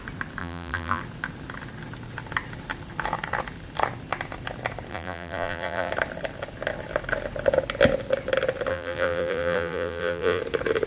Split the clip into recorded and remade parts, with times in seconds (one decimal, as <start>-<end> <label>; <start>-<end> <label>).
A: 0.0-0.4 recorded; 0.4-1.0 remade; 1.0-4.9 recorded; 4.9-5.9 remade; 5.9-8.7 recorded; 8.7-10.4 remade; 10.4-10.9 recorded